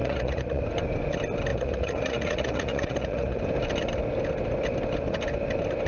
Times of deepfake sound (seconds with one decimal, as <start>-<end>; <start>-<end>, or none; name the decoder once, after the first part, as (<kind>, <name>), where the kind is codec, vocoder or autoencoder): 0.0-0.6 (vocoder, Vocos); 1.5-3.4